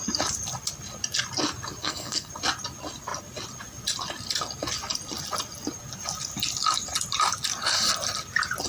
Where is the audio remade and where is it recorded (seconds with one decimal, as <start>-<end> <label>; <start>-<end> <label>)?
0.0-1.8 recorded; 1.8-2.3 remade; 2.3-8.7 recorded